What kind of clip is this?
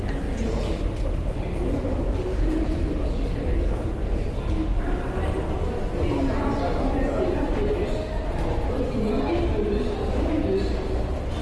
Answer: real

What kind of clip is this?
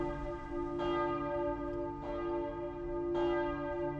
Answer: real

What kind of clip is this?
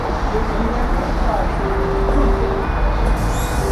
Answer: real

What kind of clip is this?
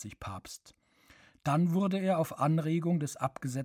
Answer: real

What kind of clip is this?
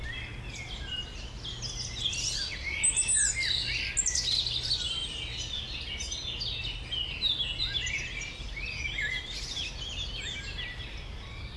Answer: real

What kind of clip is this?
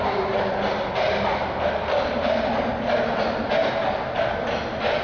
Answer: real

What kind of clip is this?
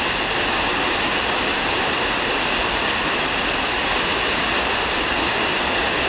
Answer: real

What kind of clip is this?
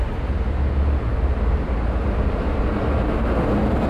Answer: real